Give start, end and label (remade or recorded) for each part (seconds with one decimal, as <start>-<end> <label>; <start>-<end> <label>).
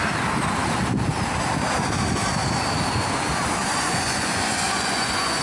0.0-3.6 recorded; 3.6-5.4 remade